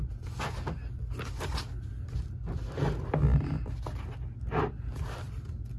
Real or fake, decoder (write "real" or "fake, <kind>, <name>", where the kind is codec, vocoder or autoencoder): real